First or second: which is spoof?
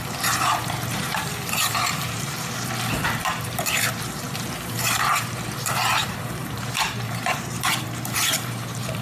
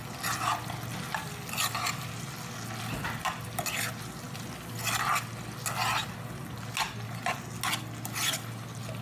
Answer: first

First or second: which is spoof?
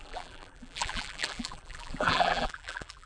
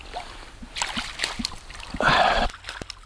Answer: first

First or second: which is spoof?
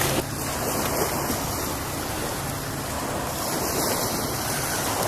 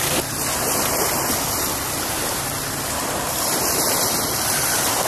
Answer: second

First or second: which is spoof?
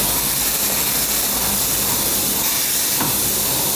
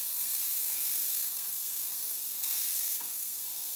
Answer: second